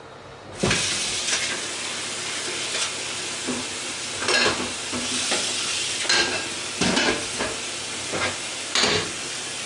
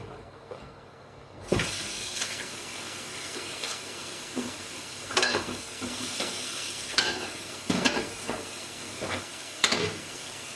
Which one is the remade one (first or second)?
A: second